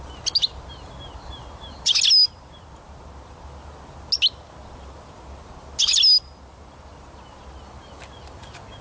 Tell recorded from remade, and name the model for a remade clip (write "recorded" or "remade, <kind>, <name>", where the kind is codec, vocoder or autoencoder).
recorded